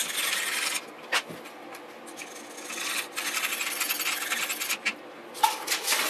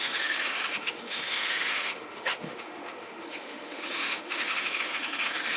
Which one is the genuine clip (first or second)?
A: first